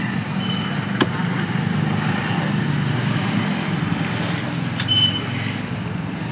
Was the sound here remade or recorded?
recorded